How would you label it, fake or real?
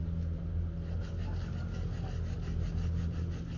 real